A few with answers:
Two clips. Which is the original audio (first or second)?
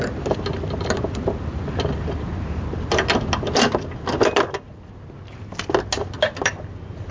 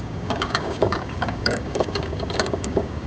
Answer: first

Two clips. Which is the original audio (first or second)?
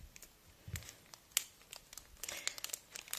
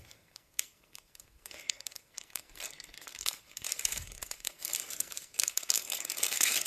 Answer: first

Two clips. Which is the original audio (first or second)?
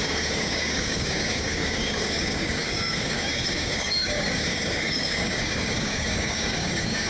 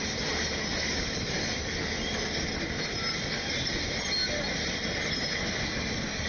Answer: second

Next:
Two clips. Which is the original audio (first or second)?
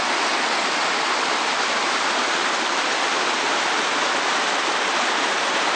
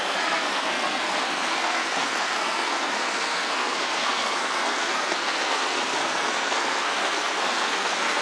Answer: first